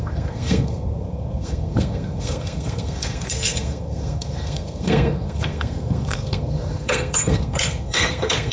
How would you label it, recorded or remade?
remade